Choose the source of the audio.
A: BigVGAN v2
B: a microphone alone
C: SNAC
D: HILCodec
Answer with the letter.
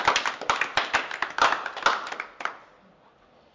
B